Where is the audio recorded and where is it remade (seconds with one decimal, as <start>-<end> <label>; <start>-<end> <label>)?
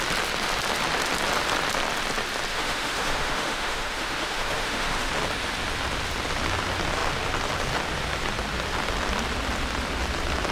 0.0-2.5 recorded; 2.5-5.1 remade; 5.1-10.5 recorded